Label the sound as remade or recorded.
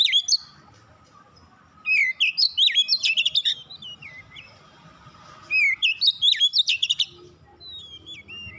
recorded